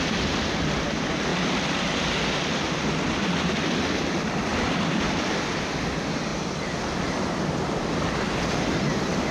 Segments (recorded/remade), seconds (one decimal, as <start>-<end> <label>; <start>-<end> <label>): 0.0-4.5 recorded; 4.5-5.3 remade; 5.3-9.3 recorded